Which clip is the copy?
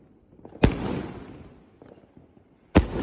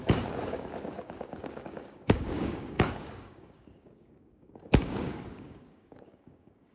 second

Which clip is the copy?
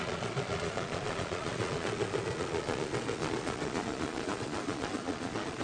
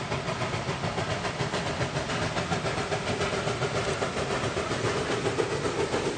first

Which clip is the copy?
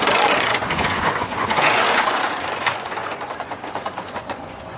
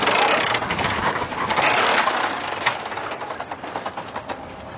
first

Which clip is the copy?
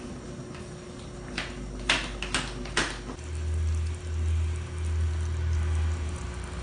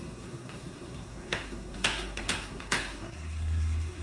second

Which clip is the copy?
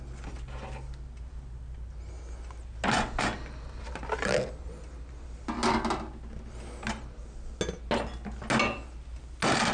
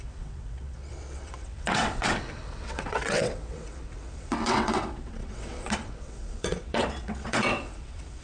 second